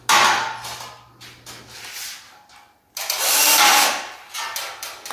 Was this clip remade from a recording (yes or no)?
no